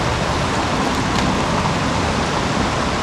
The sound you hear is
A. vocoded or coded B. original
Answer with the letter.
B